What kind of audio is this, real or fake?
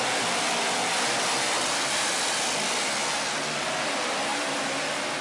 real